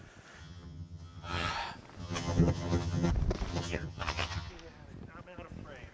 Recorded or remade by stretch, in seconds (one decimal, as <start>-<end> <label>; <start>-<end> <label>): 0.0-0.4 recorded; 0.4-1.5 remade; 1.5-2.0 recorded; 2.0-3.1 remade; 3.1-3.5 recorded; 3.5-4.5 remade; 4.5-5.9 recorded